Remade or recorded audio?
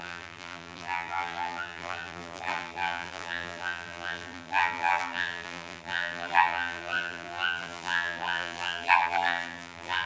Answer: remade